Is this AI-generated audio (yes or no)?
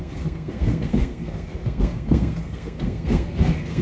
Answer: yes